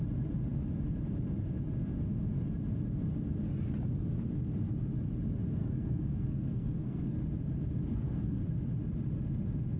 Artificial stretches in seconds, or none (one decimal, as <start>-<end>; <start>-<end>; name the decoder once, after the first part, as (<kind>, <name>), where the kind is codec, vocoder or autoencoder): 5.6-7.2 (codec, SNAC); 7.9-8.4